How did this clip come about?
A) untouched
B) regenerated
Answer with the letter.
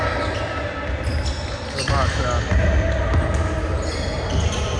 A